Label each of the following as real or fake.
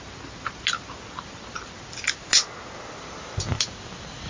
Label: real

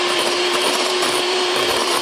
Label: fake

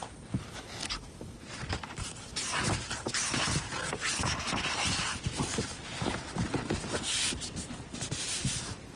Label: real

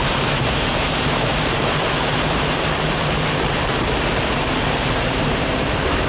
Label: fake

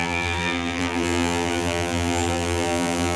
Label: fake